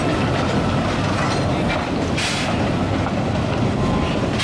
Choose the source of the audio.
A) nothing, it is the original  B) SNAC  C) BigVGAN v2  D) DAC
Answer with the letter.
A